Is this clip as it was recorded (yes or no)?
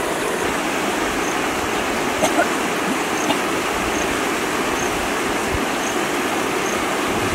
yes